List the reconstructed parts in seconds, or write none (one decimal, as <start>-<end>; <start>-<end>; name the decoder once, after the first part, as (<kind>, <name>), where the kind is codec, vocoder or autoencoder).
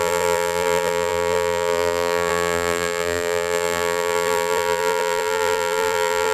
0.0-6.3 (vocoder, BigVGAN v2)